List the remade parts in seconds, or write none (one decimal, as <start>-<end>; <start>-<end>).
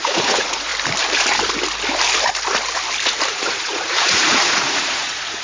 0.0-0.7; 3.3-5.4